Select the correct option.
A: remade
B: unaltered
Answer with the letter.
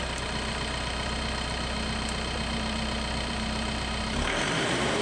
A